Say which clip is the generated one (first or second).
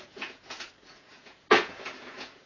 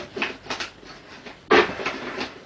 first